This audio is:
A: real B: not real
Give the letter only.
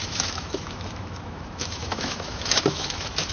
B